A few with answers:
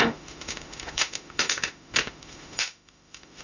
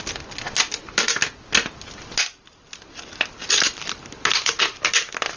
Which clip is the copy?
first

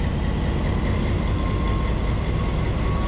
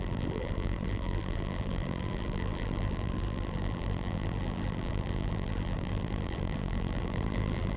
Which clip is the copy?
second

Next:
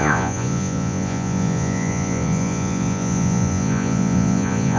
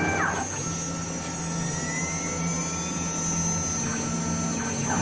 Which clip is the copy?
first